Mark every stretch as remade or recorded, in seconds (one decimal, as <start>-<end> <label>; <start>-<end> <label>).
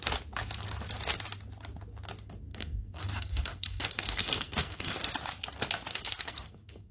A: 0.0-2.5 recorded; 2.5-5.1 remade; 5.1-5.9 recorded; 5.9-6.9 remade